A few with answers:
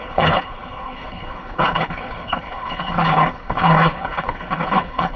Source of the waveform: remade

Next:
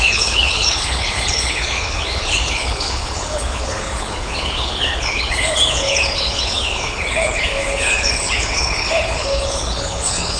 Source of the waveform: remade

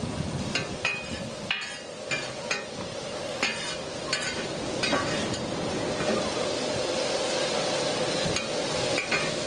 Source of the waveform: recorded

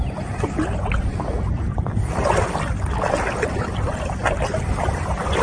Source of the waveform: recorded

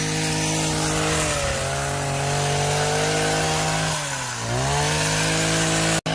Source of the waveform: recorded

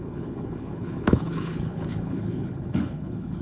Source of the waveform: remade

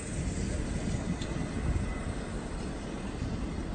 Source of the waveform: recorded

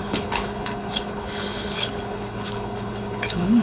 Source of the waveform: remade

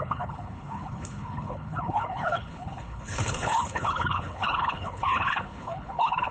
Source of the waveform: remade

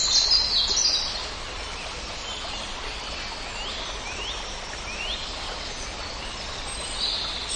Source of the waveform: recorded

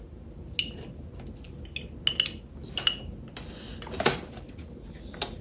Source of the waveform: recorded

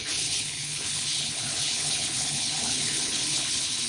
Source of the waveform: remade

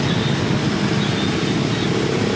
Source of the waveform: recorded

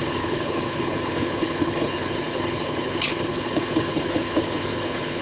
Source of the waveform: remade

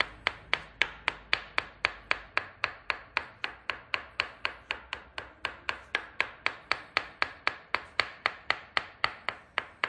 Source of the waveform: recorded